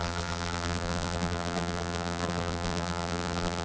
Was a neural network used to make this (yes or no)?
yes